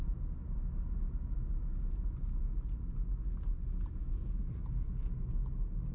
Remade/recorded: recorded